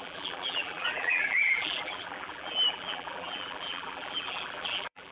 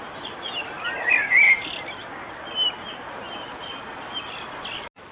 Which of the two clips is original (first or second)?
second